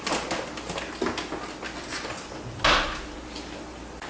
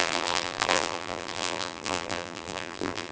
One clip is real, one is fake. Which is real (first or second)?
first